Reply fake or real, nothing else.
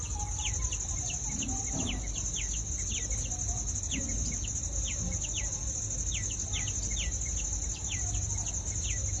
real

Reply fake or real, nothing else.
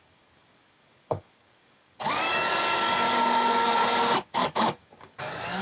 fake